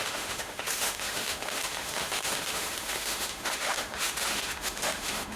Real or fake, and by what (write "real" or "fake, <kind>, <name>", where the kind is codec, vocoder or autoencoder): fake, autoencoder, DAC-VAE